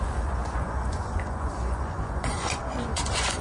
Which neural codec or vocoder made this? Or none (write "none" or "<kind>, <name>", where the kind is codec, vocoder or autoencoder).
vocoder, Vocos